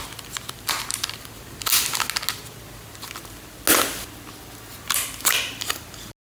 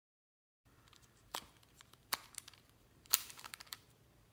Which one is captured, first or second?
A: first